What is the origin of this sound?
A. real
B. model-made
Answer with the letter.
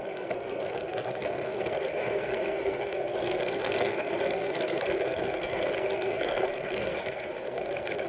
B